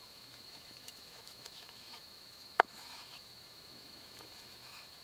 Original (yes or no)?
no